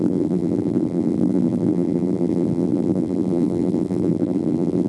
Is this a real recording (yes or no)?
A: no